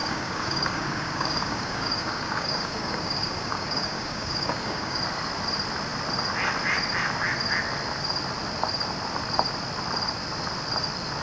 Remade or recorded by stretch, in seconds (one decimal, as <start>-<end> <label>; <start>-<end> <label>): 0.0-5.0 remade; 5.0-11.2 recorded